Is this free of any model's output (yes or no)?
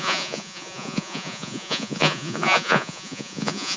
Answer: no